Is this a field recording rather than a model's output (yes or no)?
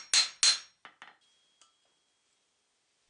yes